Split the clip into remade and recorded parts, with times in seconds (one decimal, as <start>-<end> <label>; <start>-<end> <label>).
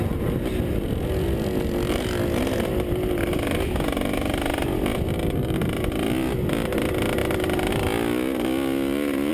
0.0-9.3 recorded